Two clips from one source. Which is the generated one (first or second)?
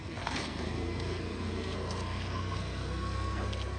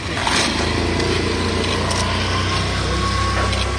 first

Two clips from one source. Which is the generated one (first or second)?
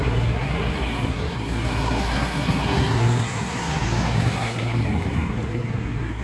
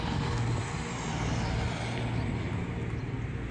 first